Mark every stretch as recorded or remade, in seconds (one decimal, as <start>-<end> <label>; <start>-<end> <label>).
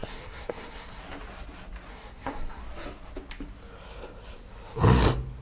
0.0-1.0 remade; 1.0-1.9 recorded; 1.9-2.6 remade; 2.6-5.4 recorded